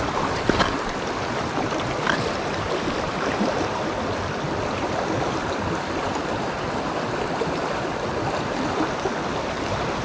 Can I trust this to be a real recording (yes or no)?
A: yes